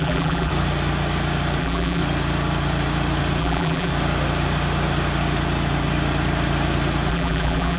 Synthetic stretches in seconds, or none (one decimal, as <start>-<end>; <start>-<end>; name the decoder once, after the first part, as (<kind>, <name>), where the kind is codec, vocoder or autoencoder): 0.0-0.5 (vocoder, BigVGAN v2); 1.6-2.0; 3.4-3.9; 7.1-7.8